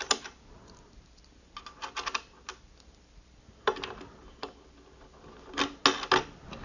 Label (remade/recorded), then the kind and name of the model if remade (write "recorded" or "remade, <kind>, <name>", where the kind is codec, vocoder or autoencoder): recorded